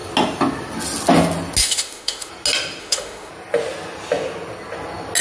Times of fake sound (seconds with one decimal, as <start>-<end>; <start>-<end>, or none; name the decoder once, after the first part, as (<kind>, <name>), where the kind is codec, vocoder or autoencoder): 1.6-2.3 (autoencoder, DAC-VAE); 2.8-3.3